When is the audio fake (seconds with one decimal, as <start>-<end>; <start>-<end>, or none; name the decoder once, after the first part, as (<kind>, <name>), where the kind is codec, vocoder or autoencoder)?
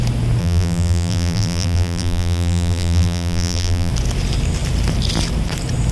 0.4-3.9 (vocoder, BigVGAN v2)